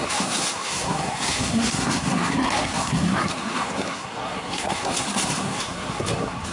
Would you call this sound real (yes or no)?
no